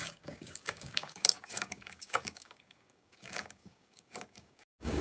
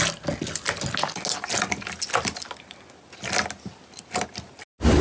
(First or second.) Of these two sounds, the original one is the second